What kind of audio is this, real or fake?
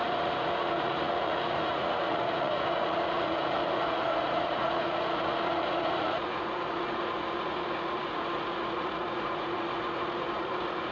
fake